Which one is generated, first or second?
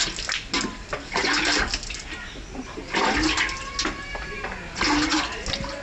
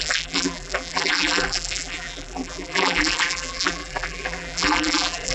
second